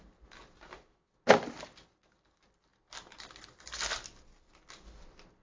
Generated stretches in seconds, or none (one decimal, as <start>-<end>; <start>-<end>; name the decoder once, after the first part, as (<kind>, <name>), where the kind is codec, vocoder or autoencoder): none